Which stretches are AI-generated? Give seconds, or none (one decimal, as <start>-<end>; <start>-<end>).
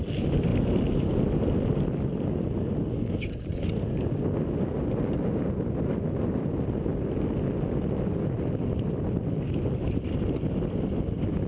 6.9-10.5